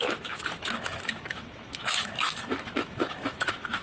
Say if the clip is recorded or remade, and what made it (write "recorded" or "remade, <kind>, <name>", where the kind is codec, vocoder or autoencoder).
remade, autoencoder, DAC-VAE